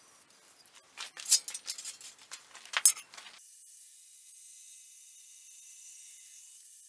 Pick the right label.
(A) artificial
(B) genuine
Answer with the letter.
B